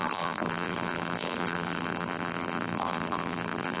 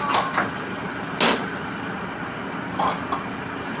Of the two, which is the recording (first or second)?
second